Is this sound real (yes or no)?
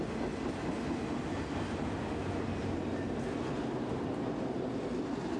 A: yes